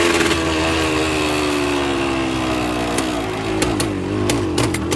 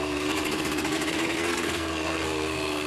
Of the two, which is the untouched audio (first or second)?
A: first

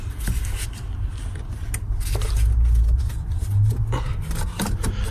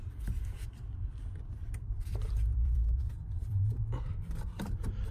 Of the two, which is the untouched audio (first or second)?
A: first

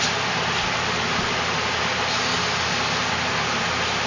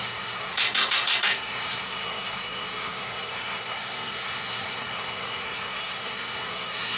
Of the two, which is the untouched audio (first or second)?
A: first